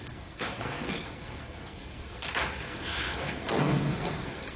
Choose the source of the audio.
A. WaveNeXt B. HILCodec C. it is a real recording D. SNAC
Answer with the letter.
D